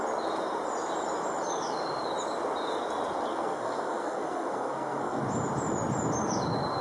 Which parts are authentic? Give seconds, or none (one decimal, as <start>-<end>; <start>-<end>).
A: 0.0-3.3; 5.2-6.8